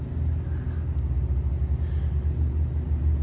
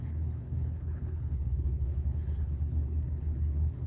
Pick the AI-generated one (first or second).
second